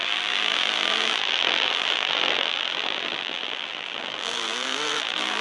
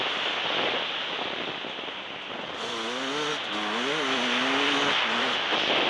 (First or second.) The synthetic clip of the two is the first